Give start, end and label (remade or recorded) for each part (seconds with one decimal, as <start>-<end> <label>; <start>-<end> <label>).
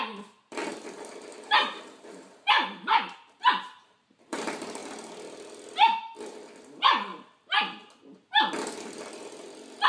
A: 0.0-4.8 remade; 4.8-6.5 recorded; 6.5-7.1 remade; 7.1-9.9 recorded